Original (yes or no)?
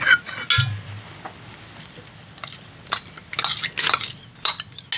yes